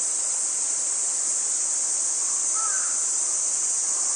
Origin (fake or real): real